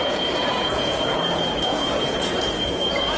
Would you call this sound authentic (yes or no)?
no